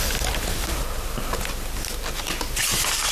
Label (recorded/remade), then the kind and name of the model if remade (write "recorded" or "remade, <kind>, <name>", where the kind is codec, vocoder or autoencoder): recorded